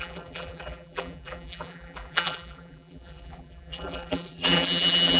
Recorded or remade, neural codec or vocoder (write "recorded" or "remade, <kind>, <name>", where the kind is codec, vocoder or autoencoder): remade, vocoder, BigVGAN v2